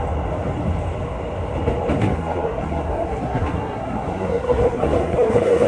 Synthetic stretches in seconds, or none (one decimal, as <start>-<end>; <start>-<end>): 2.0-5.7